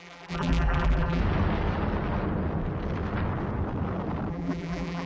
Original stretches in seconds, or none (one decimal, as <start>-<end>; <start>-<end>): 1.2-4.3